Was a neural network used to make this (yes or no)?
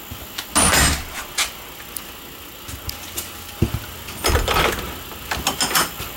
no